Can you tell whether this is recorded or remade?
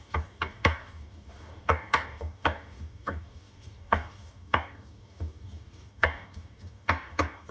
remade